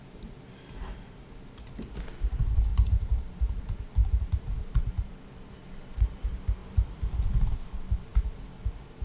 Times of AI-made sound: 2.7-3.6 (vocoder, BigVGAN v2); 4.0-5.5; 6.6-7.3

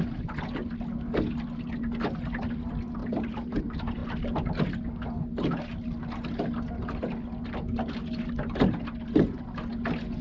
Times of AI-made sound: 3.0-3.6 (vocoder, BigVGAN v2)

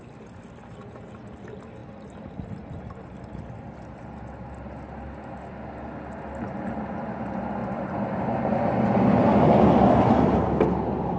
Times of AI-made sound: 7.6-8.5 (vocoder, BigVGAN v2)

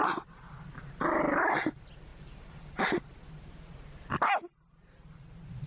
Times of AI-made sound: 2.1-3.0 (vocoder, BigVGAN v2)

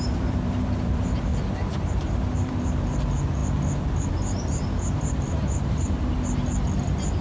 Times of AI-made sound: 0.0-1.3 (vocoder, BigVGAN v2); 1.9-3.4; 4.1-6.1